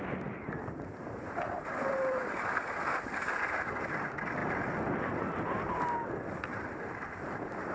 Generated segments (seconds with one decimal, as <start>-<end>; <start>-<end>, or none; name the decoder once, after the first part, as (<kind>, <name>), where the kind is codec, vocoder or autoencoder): none